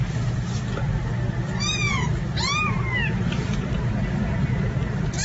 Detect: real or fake real